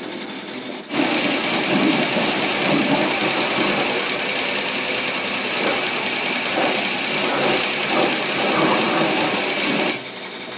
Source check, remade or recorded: recorded